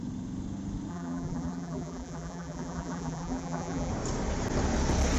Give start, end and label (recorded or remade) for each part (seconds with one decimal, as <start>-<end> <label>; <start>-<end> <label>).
0.0-0.9 recorded; 0.9-3.9 remade; 3.9-5.2 recorded